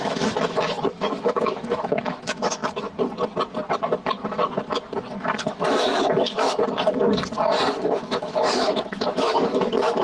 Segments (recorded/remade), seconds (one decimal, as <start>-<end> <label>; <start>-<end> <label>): 0.0-2.6 remade; 2.6-5.4 recorded; 5.4-6.6 remade; 6.6-7.7 recorded; 7.7-10.0 remade